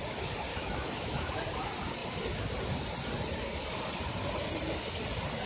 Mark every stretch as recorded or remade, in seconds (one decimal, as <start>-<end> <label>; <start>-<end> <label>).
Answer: 0.0-0.5 recorded; 0.5-1.3 remade; 1.3-5.5 recorded